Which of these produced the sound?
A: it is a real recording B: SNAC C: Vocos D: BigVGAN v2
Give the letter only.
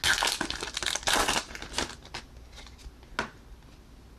A